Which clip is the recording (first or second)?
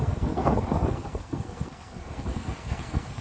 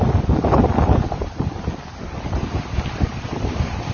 second